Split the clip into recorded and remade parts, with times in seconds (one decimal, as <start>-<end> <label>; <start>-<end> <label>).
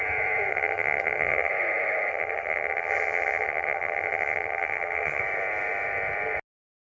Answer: 0.0-0.5 recorded; 0.5-1.5 remade; 1.5-2.1 recorded; 2.1-5.2 remade; 5.2-7.0 recorded